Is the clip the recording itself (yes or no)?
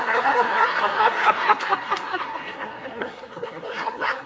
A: no